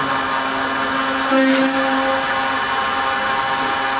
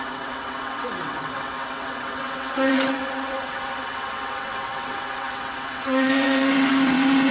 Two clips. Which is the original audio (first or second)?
first